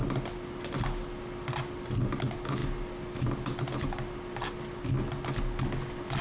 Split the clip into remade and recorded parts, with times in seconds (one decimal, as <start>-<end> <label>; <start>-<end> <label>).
0.0-6.2 recorded